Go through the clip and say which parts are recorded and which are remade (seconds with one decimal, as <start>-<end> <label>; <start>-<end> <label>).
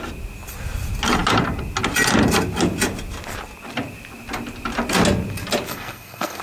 0.0-5.7 recorded; 5.7-6.4 remade